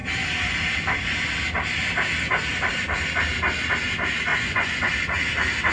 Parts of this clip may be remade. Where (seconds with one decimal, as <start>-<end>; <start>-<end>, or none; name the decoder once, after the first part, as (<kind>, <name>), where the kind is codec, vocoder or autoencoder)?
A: 4.3-4.9 (vocoder, Vocos)